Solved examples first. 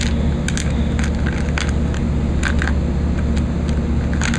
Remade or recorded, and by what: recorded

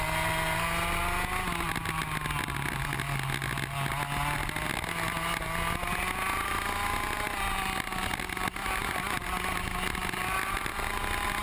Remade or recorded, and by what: recorded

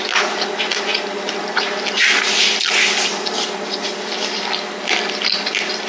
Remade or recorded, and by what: recorded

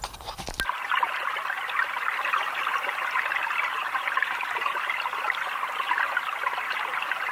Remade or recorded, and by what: recorded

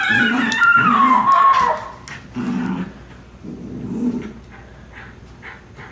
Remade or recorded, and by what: recorded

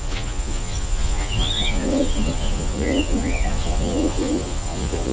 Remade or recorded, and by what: remade, vocoder, Vocos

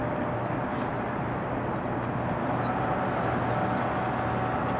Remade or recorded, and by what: recorded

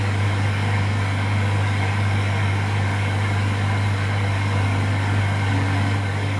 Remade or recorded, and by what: remade, codec, DAC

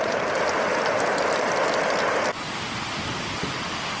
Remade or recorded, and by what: recorded